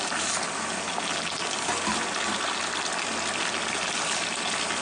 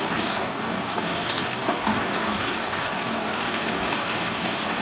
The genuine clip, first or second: first